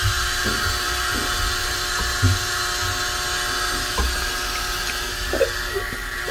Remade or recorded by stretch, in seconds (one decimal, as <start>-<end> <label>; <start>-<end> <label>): 0.0-6.3 recorded